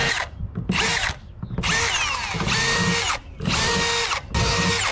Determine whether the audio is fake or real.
real